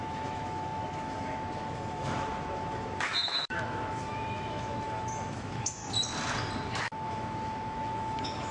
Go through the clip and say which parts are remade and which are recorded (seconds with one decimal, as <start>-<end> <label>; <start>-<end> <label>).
0.0-5.8 remade; 5.8-6.8 recorded; 6.8-8.5 remade